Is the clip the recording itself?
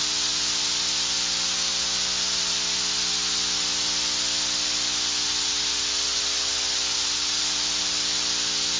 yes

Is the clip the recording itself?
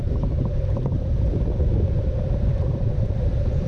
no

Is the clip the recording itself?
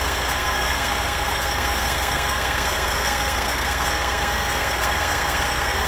no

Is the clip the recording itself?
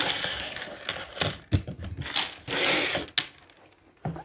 yes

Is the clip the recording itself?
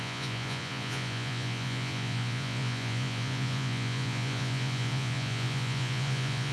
no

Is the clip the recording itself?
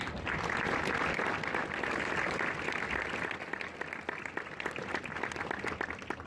yes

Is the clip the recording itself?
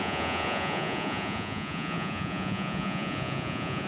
no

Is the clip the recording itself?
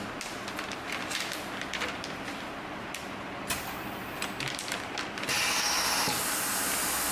yes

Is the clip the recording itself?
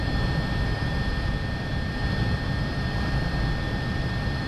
no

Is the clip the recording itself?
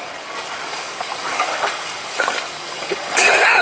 no